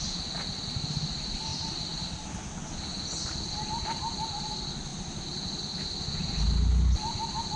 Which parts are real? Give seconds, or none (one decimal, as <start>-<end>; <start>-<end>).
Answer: 0.0-7.6